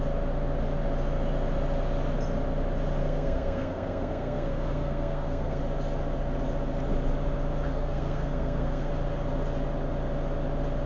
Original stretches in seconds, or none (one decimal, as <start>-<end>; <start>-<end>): 0.0-3.0; 5.6-7.7; 8.9-10.9

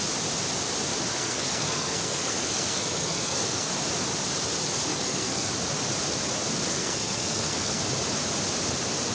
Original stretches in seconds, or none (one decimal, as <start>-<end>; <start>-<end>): 0.0-1.1; 3.7-4.9; 5.5-6.7; 7.8-9.1

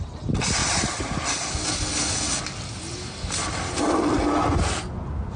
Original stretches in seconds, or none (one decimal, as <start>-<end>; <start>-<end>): 0.0-5.4

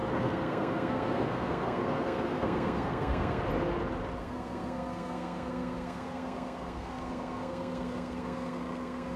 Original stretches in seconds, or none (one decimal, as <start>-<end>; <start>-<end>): 3.4-4.2